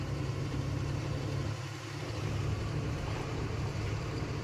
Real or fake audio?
fake